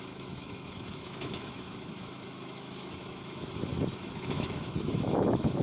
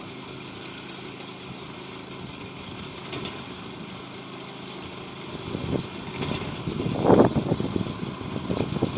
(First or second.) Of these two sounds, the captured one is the second